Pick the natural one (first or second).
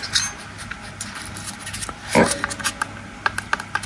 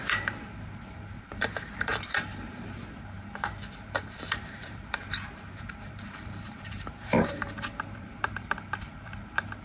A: first